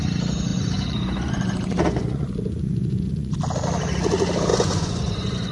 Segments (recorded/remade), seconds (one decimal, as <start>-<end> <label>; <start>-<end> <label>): 0.0-0.5 recorded; 0.5-3.3 remade; 3.3-4.5 recorded; 4.5-5.5 remade